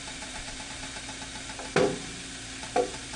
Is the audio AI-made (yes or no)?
yes